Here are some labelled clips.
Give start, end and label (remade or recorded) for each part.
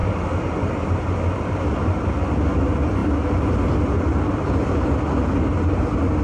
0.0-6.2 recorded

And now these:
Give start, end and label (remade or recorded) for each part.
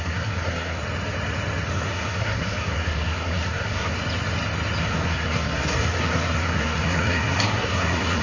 0.0-0.8 remade; 0.8-1.7 recorded; 1.7-3.9 remade; 3.9-4.8 recorded; 4.8-8.2 remade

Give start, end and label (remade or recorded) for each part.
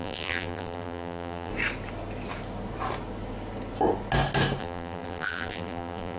0.0-1.5 remade; 1.5-4.6 recorded; 4.6-6.2 remade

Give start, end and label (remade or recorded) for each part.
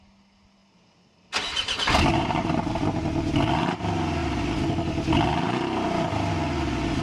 0.0-2.1 recorded; 2.1-3.0 remade; 3.0-7.0 recorded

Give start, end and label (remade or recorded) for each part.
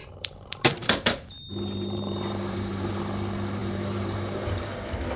0.0-2.9 remade; 2.9-3.6 recorded; 3.6-4.2 remade; 4.2-5.2 recorded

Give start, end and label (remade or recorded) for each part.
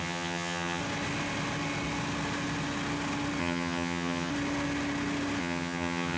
0.0-0.8 remade; 0.8-3.4 recorded; 3.4-4.3 remade; 4.3-5.4 recorded; 5.4-6.2 remade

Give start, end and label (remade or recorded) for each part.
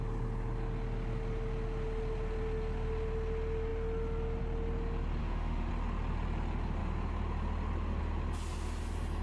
0.0-5.2 recorded; 5.2-5.7 remade; 5.7-9.2 recorded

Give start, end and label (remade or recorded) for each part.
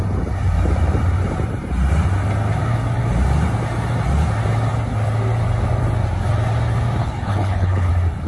0.0-7.0 recorded; 7.0-7.9 remade; 7.9-8.3 recorded